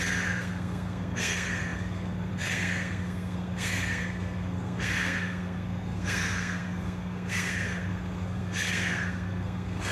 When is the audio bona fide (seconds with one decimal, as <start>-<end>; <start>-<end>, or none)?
none